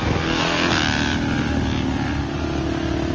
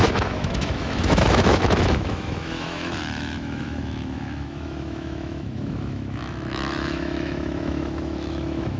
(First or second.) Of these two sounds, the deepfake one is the second